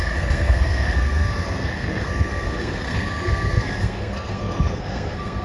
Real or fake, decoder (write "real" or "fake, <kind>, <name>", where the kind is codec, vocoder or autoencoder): fake, codec, SNAC